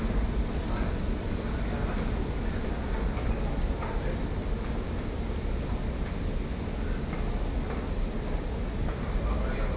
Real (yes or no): yes